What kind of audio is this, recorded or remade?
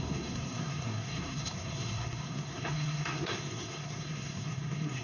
remade